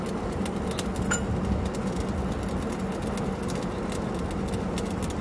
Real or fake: real